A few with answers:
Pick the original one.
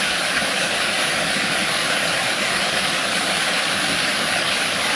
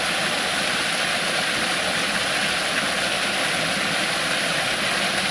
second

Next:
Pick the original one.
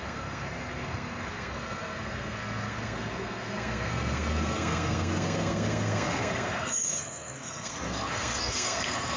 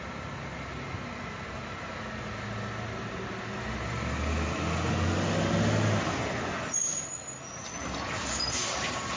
second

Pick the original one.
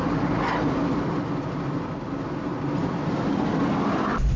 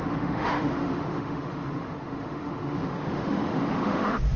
first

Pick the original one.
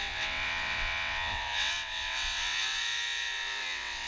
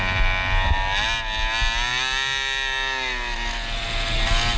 second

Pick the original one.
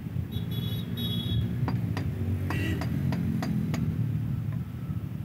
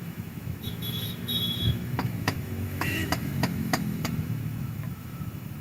first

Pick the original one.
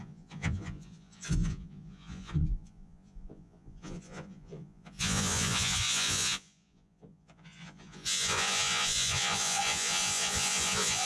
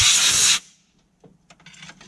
second